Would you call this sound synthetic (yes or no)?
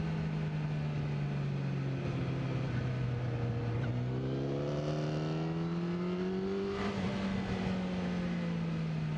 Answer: no